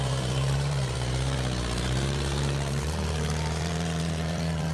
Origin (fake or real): fake